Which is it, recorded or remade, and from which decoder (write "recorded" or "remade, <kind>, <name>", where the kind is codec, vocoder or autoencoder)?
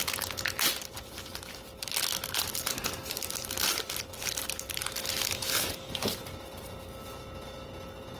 recorded